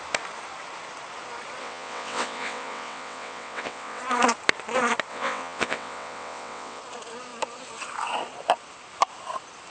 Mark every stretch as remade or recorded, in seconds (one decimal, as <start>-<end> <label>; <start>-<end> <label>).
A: 0.0-1.6 recorded; 1.6-4.0 remade; 4.0-5.1 recorded; 5.1-6.8 remade; 6.8-9.7 recorded